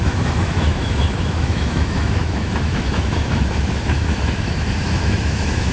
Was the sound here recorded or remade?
remade